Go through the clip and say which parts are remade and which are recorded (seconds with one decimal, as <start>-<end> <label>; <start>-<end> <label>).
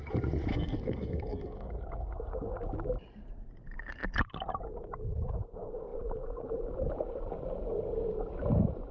0.0-0.5 recorded; 0.5-1.7 remade; 1.7-8.9 recorded